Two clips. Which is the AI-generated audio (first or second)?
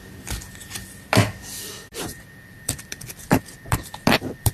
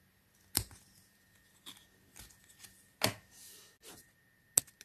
first